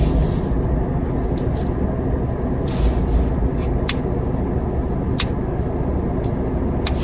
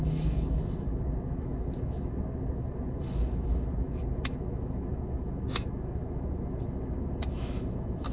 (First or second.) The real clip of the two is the first